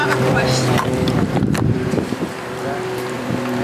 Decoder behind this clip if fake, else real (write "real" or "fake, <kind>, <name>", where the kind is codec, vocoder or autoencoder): fake, vocoder, BigVGAN v2